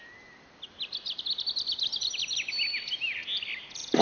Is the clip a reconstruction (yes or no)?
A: no